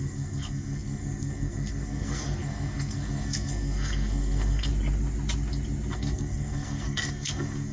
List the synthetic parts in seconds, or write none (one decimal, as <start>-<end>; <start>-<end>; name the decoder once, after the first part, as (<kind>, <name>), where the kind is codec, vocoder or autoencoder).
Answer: 0.0-4.7 (codec, SNAC); 5.9-7.7